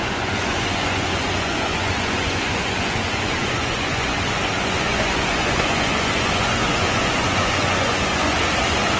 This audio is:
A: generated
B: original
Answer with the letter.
A